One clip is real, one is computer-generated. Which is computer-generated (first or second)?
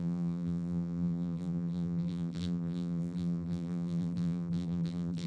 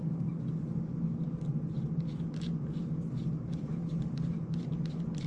first